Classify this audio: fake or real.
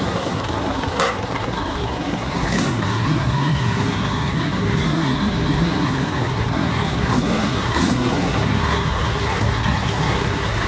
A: fake